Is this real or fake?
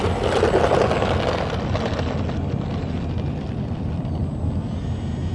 real